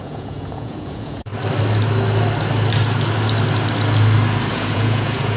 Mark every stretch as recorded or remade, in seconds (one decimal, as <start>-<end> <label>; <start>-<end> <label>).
0.0-1.3 remade; 1.3-4.5 recorded; 4.5-5.4 remade